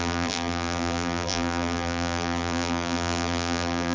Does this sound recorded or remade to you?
remade